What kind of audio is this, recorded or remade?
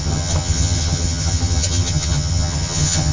remade